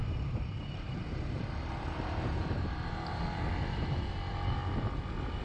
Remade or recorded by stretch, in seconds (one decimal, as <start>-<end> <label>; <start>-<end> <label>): 0.0-3.2 remade; 3.2-5.4 recorded

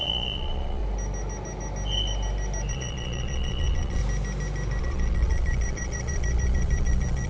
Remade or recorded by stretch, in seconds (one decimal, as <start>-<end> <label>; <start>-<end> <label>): 0.0-0.8 remade; 0.8-2.7 recorded; 2.7-4.0 remade; 4.0-4.8 recorded; 4.8-7.3 remade

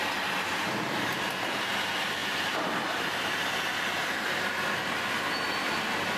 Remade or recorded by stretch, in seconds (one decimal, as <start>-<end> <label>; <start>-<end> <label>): 0.0-6.2 recorded

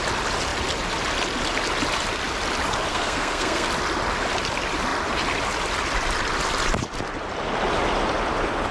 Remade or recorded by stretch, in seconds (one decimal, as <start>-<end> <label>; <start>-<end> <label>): 0.0-2.9 recorded; 2.9-3.7 remade; 3.7-8.7 recorded

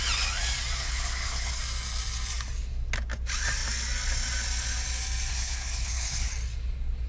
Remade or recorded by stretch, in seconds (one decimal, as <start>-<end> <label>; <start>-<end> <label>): 0.0-0.8 recorded; 0.8-1.6 remade; 1.6-5.3 recorded; 5.3-6.3 remade; 6.3-7.1 recorded

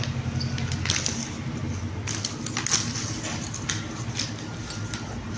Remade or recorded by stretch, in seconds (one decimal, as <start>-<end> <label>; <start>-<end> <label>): 0.0-5.4 recorded

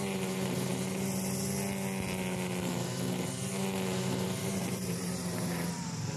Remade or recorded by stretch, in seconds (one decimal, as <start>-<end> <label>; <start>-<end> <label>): 0.0-0.7 remade; 0.7-4.4 recorded; 4.4-6.2 remade

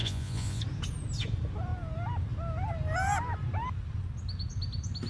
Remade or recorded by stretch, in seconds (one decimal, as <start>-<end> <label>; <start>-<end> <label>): 0.0-0.6 remade; 0.6-5.1 recorded